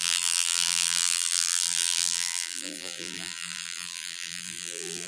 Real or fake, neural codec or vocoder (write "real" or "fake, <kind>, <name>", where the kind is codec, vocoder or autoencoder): fake, vocoder, BigVGAN v2